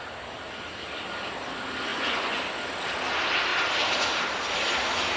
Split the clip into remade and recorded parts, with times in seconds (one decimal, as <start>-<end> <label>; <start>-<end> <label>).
0.0-1.9 recorded; 1.9-2.4 remade; 2.4-5.2 recorded